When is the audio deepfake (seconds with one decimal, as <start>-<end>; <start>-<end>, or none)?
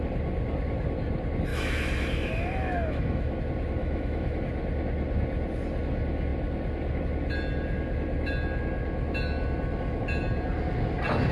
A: 1.5-3.4; 3.8-4.5